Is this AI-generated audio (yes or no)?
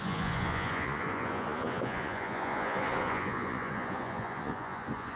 yes